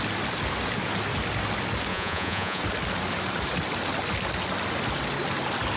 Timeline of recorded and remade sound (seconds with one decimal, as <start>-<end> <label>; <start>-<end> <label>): 0.0-1.9 recorded; 1.9-2.6 remade; 2.6-5.8 recorded